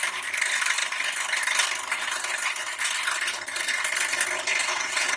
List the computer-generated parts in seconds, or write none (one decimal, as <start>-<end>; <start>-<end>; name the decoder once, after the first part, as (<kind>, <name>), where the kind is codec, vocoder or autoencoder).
4.6-5.2 (vocoder, WaveNeXt)